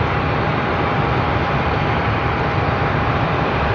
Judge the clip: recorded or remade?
remade